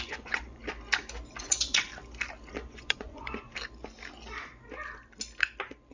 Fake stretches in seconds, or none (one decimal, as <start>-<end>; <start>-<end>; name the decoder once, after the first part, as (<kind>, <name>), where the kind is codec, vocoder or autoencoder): 0.0-0.6 (vocoder, Vocos); 1.4-1.9; 2.5-3.5